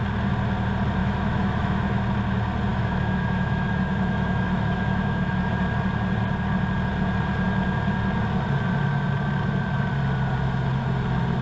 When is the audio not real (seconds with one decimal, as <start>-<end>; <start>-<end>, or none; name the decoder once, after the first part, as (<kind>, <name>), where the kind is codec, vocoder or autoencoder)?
1.0-2.0 (autoencoder, DAC-VAE); 2.7-5.5

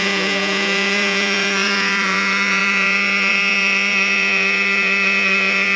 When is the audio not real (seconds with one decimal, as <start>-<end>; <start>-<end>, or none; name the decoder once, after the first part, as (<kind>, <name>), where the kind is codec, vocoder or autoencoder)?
0.0-5.8 (vocoder, Vocos)

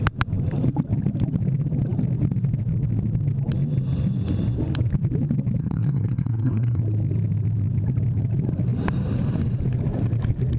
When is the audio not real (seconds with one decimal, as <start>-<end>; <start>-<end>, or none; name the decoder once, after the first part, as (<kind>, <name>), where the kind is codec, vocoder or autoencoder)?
5.6-6.8 (codec, SNAC)

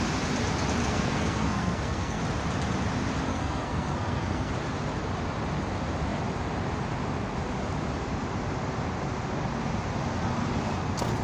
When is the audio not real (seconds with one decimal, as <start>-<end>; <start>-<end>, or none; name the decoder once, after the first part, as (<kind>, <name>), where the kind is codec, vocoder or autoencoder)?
0.8-2.2 (codec, SNAC); 3.3-4.5

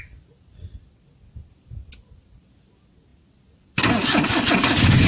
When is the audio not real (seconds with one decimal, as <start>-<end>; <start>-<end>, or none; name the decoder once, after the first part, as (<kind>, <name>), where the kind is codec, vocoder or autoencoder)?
none

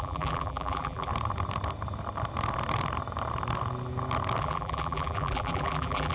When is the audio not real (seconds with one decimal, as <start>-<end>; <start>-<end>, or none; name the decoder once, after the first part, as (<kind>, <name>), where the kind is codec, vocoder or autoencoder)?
0.0-1.1 (vocoder, BigVGAN v2); 4.4-6.1

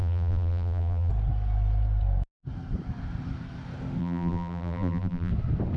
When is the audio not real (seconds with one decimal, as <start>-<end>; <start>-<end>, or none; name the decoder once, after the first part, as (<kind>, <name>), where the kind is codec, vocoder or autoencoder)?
0.0-1.1 (vocoder, BigVGAN v2); 4.0-5.3

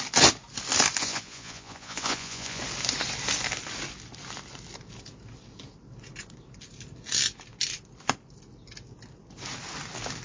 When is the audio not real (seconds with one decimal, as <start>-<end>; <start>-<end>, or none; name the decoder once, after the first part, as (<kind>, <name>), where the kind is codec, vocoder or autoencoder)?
1.0-2.6 (vocoder, Vocos)